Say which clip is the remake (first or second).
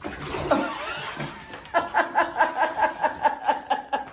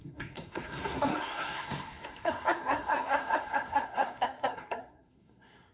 second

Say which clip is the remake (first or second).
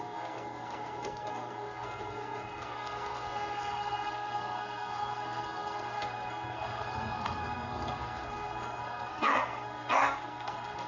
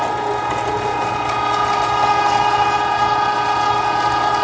first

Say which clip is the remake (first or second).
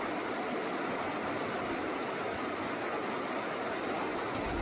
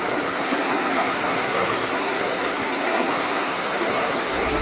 second